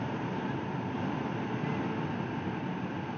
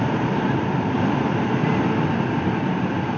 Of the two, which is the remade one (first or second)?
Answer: second